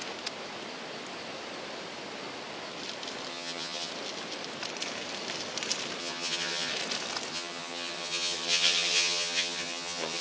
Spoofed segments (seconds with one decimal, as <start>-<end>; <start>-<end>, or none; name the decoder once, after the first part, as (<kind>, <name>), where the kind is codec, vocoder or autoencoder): 3.3-3.9 (vocoder, HiFi-GAN); 6.0-6.7; 7.3-10.2

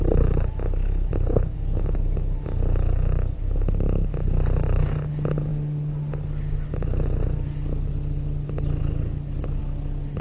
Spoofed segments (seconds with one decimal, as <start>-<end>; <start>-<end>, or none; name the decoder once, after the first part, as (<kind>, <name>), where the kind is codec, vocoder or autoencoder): none

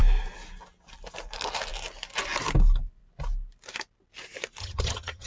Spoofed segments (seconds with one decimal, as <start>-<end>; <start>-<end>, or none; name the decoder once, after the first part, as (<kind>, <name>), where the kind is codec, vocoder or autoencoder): 4.6-5.3 (vocoder, HiFi-GAN)

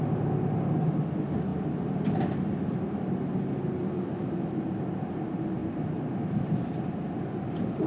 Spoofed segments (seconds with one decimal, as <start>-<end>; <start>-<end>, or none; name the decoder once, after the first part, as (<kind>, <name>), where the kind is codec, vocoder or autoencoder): none

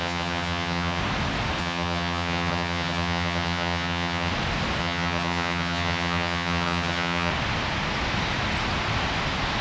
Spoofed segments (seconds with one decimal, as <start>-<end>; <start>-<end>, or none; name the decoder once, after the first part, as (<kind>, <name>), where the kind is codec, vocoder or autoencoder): 0.0-1.0 (vocoder, HiFi-GAN); 1.6-4.3; 4.8-7.3

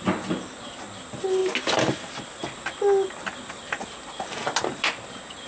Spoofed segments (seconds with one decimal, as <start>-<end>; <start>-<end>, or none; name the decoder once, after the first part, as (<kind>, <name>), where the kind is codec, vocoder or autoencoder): none